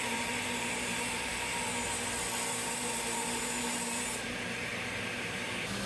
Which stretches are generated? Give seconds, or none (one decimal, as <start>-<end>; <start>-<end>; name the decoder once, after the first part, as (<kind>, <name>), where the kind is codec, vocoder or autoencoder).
0.0-1.3 (vocoder, BigVGAN v2); 2.5-4.7; 5.2-5.9